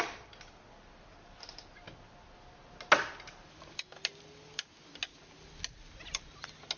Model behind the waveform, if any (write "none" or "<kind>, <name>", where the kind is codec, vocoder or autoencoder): none